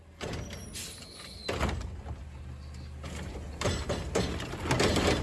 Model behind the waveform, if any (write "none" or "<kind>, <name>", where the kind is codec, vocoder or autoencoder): none